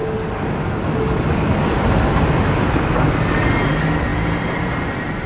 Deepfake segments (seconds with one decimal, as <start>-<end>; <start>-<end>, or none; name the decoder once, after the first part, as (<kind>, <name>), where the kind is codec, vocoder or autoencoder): none